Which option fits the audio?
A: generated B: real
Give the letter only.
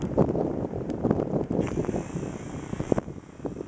A